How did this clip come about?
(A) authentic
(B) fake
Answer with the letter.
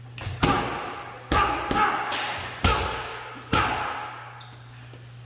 A